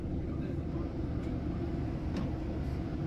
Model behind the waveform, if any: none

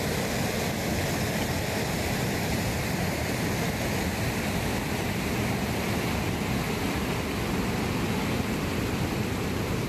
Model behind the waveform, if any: none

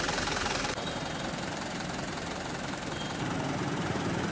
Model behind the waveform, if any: vocoder, BigVGAN v2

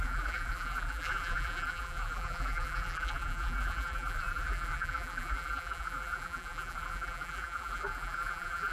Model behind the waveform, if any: vocoder, BigVGAN v2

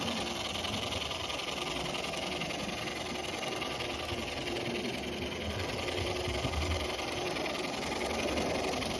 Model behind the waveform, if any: none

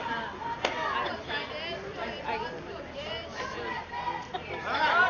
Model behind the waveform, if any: none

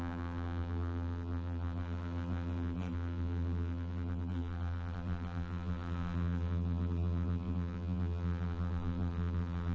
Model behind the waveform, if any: vocoder, BigVGAN v2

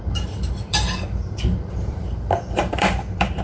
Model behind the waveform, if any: vocoder, BigVGAN v2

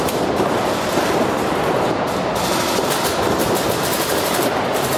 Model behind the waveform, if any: vocoder, BigVGAN v2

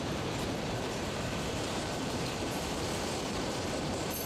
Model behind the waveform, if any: vocoder, BigVGAN v2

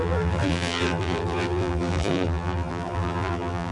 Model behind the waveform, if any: vocoder, BigVGAN v2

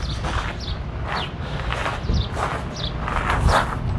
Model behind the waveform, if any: none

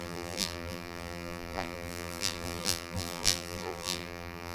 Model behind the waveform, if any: vocoder, BigVGAN v2